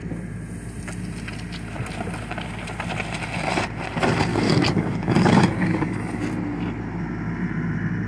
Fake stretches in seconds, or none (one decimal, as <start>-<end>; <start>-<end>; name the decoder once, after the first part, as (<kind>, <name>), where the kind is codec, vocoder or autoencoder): 4.3-6.2 (codec, DAC)